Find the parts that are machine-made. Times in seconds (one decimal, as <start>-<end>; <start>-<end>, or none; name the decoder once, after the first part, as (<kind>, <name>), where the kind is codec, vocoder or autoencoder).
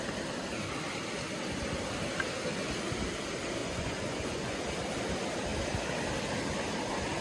3.6-4.6 (vocoder, Vocos)